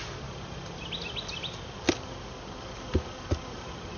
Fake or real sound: real